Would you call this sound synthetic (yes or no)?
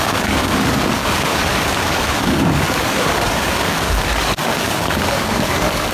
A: yes